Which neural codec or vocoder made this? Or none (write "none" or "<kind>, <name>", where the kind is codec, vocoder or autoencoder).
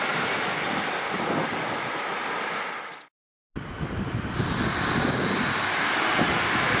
none